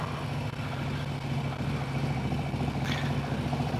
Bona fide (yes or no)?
yes